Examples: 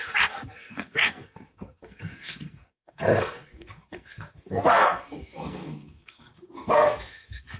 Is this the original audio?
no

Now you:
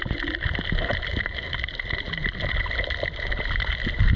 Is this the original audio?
yes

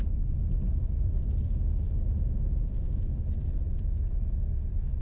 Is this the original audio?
yes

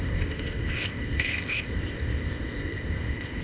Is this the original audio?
no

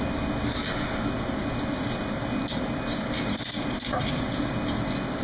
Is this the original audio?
yes